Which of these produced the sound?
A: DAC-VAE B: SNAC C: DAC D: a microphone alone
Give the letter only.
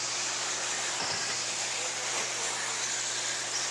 D